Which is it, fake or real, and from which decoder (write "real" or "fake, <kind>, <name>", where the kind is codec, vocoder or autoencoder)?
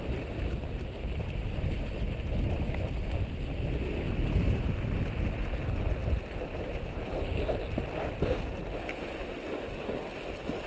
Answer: real